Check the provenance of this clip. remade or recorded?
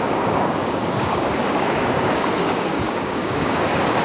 remade